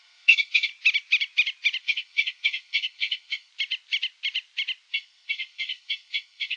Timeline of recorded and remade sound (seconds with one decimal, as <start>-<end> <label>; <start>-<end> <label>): 0.0-0.7 remade; 0.7-1.8 recorded; 1.8-3.5 remade; 3.5-4.9 recorded; 4.9-6.6 remade